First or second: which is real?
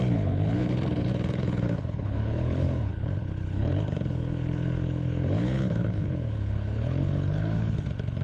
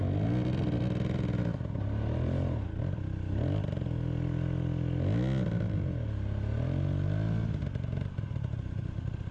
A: second